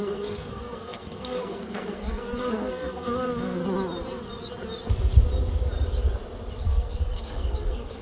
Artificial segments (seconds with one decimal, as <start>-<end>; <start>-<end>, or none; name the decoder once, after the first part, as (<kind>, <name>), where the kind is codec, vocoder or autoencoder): 0.0-3.6 (codec, SNAC); 6.6-8.0